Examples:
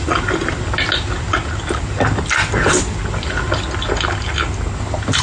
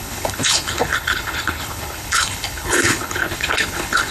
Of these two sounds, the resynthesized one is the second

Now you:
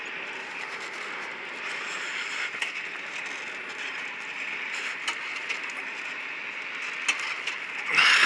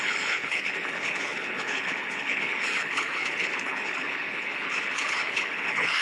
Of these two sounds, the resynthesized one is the second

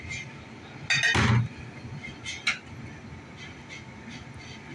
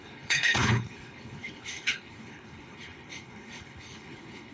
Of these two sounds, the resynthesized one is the second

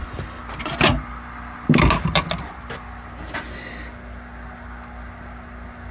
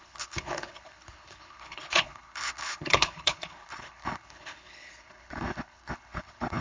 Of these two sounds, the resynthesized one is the second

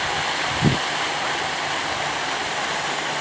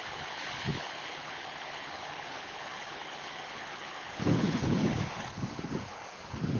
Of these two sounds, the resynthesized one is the second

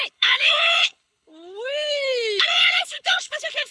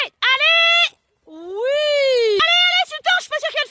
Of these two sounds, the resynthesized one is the first